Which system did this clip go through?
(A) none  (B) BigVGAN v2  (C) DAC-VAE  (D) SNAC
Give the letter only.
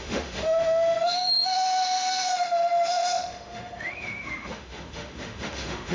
C